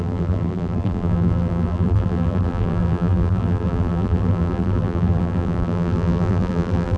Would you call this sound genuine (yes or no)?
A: no